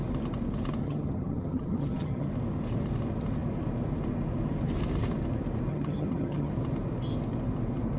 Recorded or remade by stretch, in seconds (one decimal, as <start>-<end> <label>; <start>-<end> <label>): 0.0-0.8 recorded; 0.8-2.3 remade; 2.3-5.7 recorded; 5.7-6.5 remade; 6.5-8.0 recorded